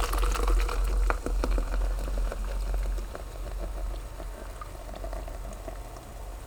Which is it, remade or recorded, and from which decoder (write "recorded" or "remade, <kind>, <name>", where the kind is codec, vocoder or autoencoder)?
recorded